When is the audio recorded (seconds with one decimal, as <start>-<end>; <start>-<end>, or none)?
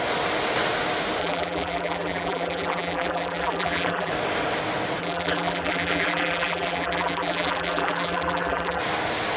0.0-1.2; 4.1-5.0; 8.8-9.4